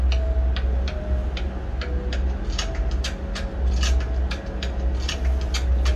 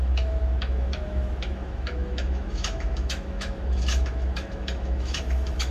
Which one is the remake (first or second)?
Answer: second